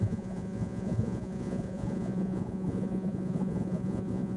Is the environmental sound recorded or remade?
remade